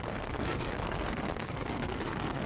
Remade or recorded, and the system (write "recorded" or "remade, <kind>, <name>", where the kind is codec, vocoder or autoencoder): remade, codec, SNAC